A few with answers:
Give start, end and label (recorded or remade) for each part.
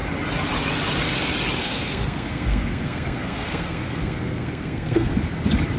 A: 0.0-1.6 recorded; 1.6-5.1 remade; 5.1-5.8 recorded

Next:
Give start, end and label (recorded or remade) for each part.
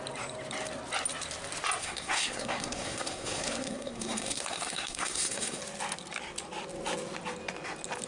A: 0.0-1.8 recorded; 1.8-5.6 remade; 5.6-8.1 recorded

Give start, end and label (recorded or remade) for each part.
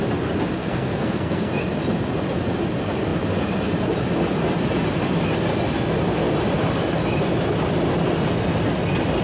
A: 0.0-0.6 recorded; 0.6-1.5 remade; 1.5-9.2 recorded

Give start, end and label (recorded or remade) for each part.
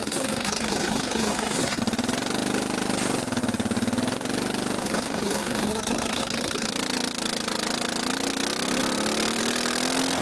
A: 0.0-1.8 remade; 1.8-4.8 recorded; 4.8-6.7 remade; 6.7-10.2 recorded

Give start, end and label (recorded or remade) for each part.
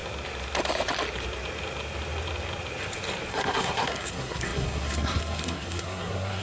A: 0.0-3.3 recorded; 3.3-6.4 remade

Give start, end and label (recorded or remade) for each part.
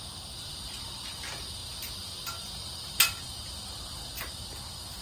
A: 0.0-5.0 recorded